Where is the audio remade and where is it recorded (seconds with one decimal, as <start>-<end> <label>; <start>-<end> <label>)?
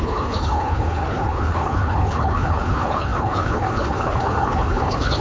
0.0-5.2 remade